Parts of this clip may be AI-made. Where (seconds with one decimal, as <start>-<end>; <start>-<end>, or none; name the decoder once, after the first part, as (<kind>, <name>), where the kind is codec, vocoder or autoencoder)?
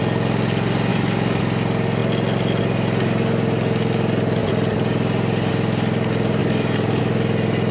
0.9-1.4 (codec, DAC); 6.4-7.0